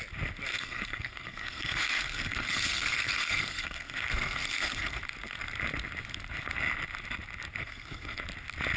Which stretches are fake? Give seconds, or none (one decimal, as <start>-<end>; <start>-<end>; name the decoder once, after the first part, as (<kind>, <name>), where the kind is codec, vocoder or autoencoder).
0.5-5.0 (codec, SNAC); 7.6-8.2